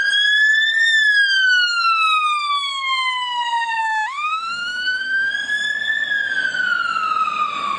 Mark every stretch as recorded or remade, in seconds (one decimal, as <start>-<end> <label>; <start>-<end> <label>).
0.0-3.8 recorded; 3.8-5.3 remade; 5.3-7.8 recorded